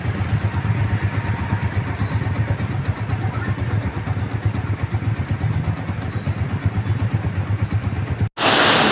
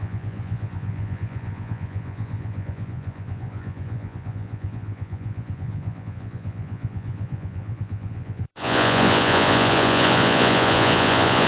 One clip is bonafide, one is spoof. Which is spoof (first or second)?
second